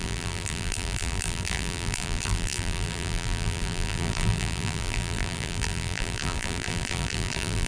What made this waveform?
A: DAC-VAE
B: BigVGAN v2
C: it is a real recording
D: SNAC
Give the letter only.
B